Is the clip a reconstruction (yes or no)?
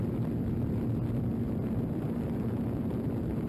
no